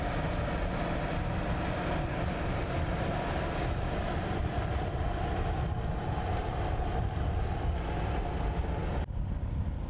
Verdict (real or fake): real